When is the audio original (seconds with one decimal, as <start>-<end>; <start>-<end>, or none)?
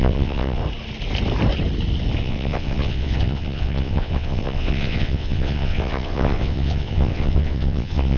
0.6-2.2